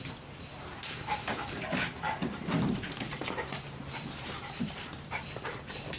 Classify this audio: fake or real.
fake